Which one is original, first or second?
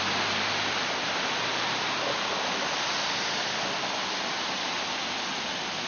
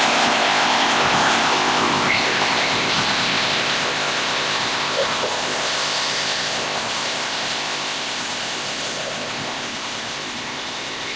first